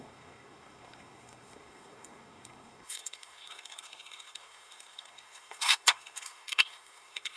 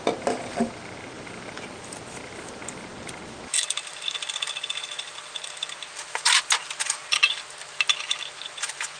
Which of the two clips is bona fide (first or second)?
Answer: second